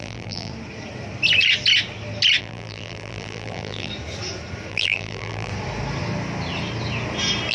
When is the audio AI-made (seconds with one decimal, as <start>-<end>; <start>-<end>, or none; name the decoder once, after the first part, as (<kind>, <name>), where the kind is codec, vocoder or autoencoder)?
0.0-0.5 (vocoder, BigVGAN v2); 2.4-3.9; 4.7-5.5